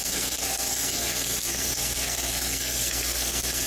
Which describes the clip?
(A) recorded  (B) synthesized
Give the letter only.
B